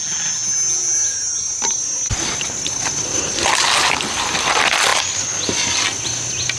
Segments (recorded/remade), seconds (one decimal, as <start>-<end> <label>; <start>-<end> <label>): 0.0-6.6 recorded